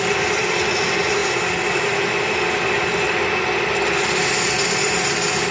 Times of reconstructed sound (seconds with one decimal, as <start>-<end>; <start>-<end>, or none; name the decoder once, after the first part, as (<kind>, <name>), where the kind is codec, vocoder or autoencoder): none